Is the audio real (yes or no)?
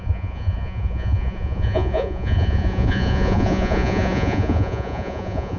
no